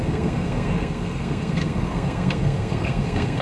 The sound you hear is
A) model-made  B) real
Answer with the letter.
A